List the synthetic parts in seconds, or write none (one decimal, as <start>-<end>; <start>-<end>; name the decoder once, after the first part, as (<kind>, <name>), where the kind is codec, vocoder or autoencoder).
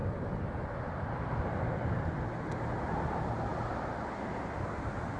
none